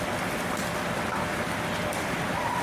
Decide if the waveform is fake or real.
real